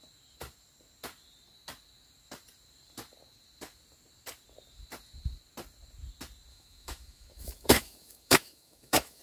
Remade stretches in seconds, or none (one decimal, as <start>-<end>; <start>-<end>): 6.5-9.2